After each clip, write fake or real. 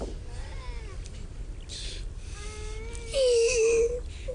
real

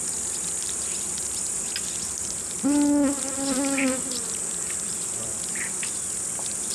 real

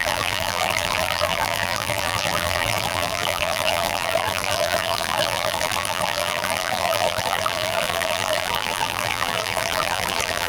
fake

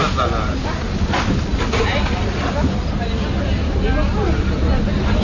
real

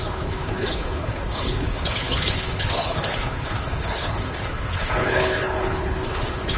fake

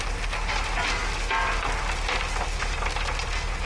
real